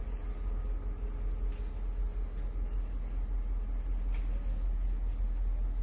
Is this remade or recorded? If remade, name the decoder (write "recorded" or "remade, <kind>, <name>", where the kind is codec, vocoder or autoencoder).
recorded